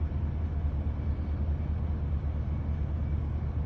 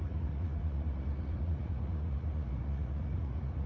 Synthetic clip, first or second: second